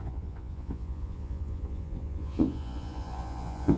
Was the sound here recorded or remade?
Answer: remade